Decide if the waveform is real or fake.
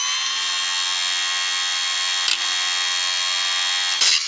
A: real